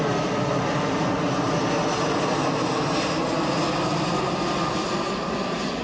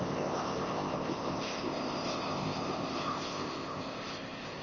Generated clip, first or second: second